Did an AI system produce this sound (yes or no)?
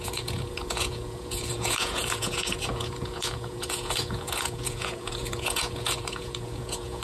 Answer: yes